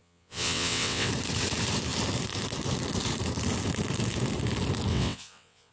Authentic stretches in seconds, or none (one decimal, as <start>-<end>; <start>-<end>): 1.1-4.9